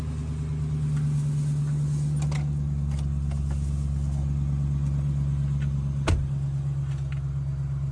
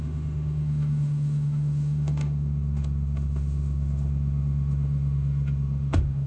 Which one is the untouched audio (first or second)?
first